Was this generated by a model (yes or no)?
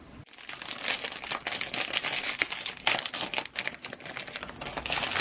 no